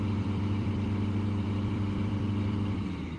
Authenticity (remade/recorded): remade